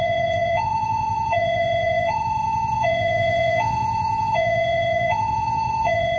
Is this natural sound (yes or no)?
no